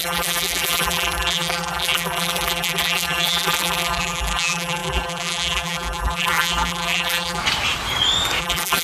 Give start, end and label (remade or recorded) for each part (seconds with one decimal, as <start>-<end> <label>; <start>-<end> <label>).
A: 0.0-7.4 remade; 7.4-8.4 recorded; 8.4-8.8 remade